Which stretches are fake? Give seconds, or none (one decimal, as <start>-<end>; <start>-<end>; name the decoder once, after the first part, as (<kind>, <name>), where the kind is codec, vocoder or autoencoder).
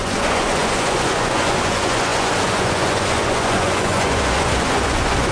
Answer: 0.0-5.3 (vocoder, Vocos)